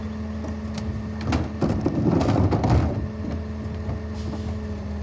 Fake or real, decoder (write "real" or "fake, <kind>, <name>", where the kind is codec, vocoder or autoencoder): real